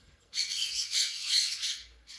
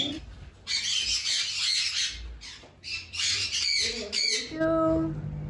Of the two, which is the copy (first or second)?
first